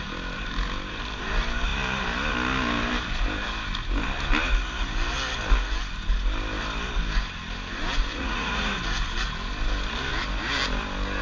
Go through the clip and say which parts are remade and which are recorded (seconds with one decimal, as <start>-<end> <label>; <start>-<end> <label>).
0.0-8.1 recorded; 8.1-8.8 remade; 8.8-11.2 recorded